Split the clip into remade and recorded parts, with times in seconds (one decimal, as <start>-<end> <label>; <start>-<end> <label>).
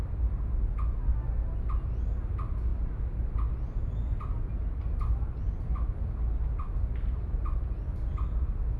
0.0-8.8 recorded